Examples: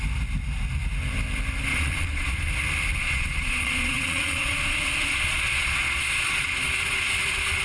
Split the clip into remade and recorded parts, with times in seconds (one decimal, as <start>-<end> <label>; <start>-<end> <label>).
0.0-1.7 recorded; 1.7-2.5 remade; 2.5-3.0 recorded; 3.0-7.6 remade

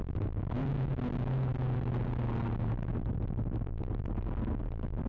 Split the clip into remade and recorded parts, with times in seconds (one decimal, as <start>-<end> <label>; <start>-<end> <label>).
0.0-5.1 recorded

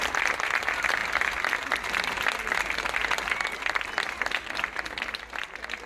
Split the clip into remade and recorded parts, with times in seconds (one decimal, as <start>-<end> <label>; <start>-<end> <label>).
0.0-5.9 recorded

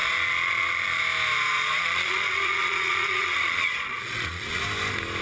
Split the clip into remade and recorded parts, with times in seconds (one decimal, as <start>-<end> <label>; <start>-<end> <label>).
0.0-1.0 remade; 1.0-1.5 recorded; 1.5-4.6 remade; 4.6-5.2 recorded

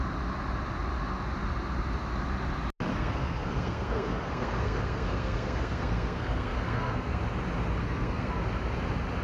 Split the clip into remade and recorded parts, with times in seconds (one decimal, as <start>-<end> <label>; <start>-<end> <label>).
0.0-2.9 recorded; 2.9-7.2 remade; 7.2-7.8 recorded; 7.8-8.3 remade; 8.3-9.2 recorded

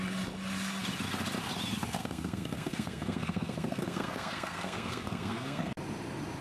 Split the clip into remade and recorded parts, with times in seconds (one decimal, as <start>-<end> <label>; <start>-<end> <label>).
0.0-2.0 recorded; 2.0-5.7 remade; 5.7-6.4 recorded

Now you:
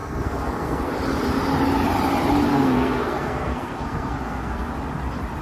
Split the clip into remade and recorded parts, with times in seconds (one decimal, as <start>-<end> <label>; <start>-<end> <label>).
0.0-0.9 remade; 0.9-2.5 recorded; 2.5-4.7 remade; 4.7-5.4 recorded